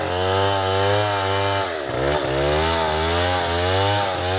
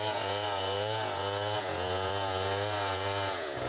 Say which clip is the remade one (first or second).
second